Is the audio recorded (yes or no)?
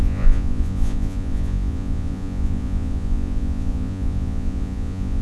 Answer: no